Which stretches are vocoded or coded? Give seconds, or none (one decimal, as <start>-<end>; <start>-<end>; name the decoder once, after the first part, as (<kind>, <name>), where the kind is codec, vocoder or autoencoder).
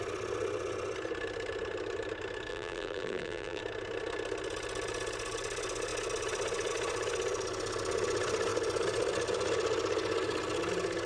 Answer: 2.5-3.6 (vocoder, BigVGAN v2)